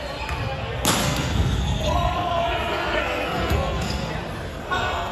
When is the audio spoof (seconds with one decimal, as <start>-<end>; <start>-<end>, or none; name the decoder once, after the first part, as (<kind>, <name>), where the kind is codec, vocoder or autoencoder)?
1.0-4.1 (codec, SNAC); 4.5-5.1